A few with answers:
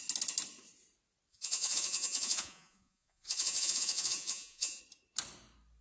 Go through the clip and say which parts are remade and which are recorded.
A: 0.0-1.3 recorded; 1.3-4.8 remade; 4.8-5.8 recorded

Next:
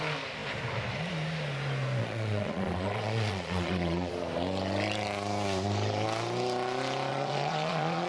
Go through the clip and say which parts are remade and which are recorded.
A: 0.0-2.0 recorded; 2.0-4.1 remade; 4.1-7.1 recorded; 7.1-8.1 remade

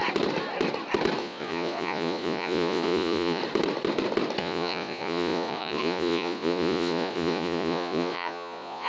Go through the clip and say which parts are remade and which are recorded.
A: 0.0-1.2 recorded; 1.2-3.4 remade; 3.4-4.4 recorded; 4.4-8.9 remade

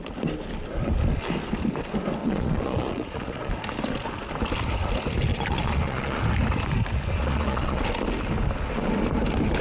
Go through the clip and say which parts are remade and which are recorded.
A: 0.0-2.2 recorded; 2.2-3.5 remade; 3.5-5.3 recorded; 5.3-6.2 remade; 6.2-7.2 recorded; 7.2-7.8 remade; 7.8-9.6 recorded

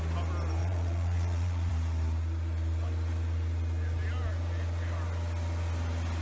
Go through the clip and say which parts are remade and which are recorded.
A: 0.0-0.6 recorded; 0.6-1.7 remade; 1.7-6.2 recorded

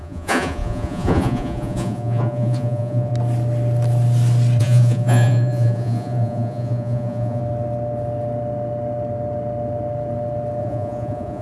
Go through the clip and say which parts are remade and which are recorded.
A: 0.0-3.1 remade; 3.1-4.6 recorded; 4.6-7.4 remade; 7.4-10.6 recorded; 10.6-11.4 remade

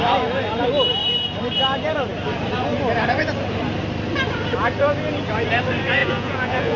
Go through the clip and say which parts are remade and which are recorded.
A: 0.0-6.0 recorded; 6.0-6.8 remade

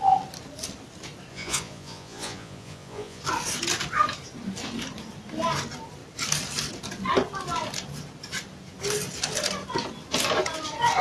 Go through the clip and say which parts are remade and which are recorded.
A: 0.0-1.3 recorded; 1.3-3.2 remade; 3.2-11.0 recorded